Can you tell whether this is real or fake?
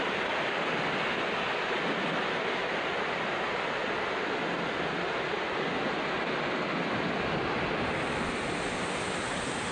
real